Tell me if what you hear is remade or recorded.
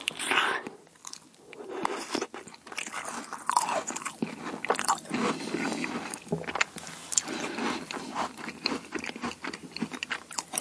recorded